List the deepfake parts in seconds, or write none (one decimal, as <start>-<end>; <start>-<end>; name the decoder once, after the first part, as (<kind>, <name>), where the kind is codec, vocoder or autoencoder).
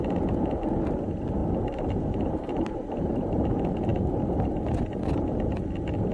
1.4-3.5 (vocoder, BigVGAN v2)